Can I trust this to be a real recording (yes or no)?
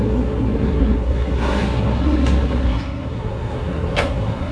no